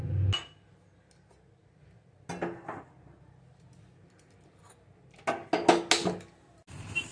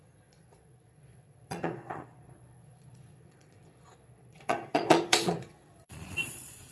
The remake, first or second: second